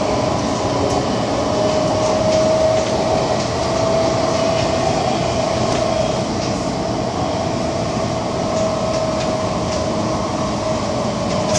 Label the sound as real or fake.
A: real